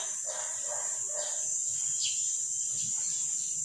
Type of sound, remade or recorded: recorded